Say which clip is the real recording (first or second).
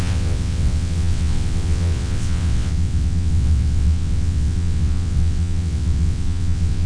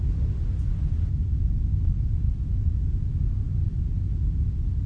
second